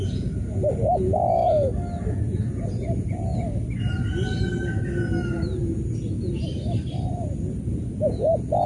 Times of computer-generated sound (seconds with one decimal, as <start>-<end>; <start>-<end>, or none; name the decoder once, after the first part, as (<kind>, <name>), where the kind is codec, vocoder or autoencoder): 0.0-1.4 (vocoder, Vocos); 2.1-3.3; 7.8-8.7